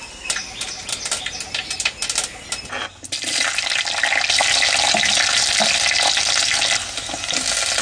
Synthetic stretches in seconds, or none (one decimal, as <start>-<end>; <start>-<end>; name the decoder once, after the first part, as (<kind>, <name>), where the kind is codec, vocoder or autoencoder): none